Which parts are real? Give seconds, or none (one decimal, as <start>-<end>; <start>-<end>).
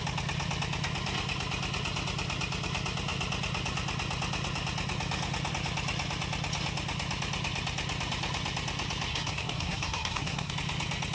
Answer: 0.0-9.1; 10.5-11.1